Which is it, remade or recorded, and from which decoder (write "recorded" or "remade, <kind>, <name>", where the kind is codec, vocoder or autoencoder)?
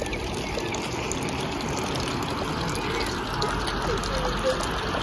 recorded